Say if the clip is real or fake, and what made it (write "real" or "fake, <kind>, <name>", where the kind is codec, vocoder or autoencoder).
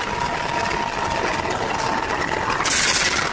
real